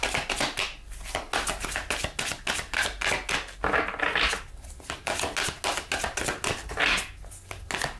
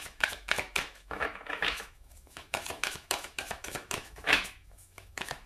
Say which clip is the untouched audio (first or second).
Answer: first